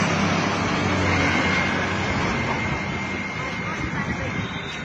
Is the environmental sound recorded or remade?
recorded